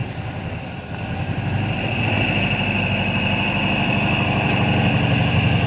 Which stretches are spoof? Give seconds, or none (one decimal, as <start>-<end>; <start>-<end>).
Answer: 0.6-5.7